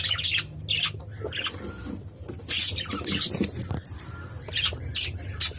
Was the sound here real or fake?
real